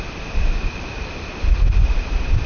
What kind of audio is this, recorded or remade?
recorded